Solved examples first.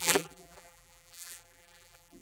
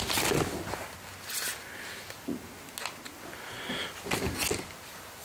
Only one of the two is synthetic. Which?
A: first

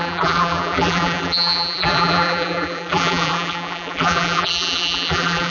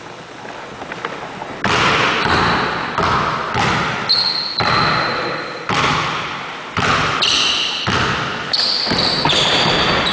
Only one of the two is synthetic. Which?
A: first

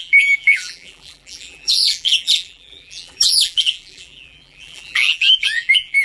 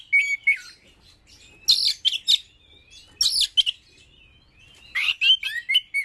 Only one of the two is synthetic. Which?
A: first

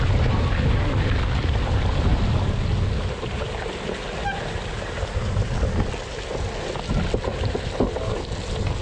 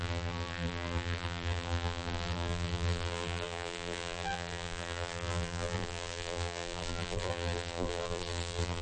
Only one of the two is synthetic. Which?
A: second